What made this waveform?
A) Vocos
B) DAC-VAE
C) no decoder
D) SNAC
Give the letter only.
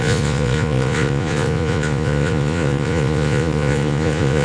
A